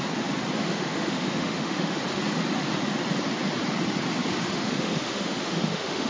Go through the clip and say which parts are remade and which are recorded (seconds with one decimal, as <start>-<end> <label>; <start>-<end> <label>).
0.0-0.6 recorded; 0.6-2.0 remade; 2.0-4.6 recorded; 4.6-6.1 remade